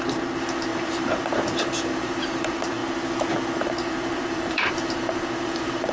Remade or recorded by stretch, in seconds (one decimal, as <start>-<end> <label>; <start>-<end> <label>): 0.0-2.8 remade; 2.8-3.6 recorded; 3.6-5.9 remade